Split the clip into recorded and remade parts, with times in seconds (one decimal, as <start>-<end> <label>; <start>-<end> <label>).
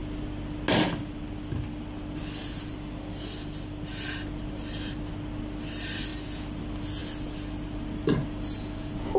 0.0-9.2 recorded